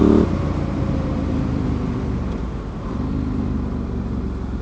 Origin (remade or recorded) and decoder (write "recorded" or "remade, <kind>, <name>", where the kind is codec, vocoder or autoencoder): recorded